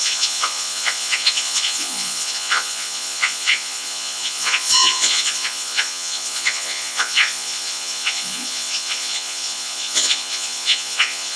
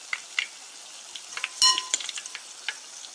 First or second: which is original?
second